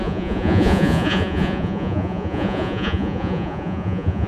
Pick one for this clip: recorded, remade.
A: remade